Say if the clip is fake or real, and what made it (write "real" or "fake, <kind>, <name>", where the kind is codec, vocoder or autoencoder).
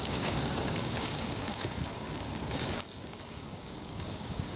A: fake, codec, DAC